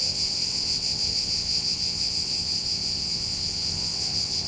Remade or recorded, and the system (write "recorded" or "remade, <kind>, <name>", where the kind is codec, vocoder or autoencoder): remade, vocoder, WaveNeXt